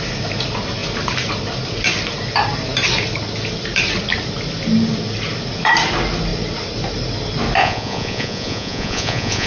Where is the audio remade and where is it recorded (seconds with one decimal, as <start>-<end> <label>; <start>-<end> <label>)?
0.0-7.6 recorded; 7.6-9.5 remade